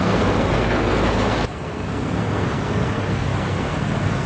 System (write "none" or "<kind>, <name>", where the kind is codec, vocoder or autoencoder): codec, SNAC